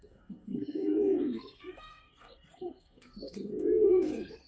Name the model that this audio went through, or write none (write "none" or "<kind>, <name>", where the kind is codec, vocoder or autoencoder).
codec, SNAC